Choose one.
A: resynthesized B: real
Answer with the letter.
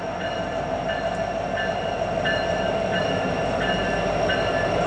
B